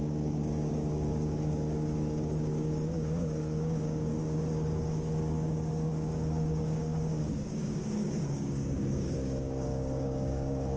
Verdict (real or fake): fake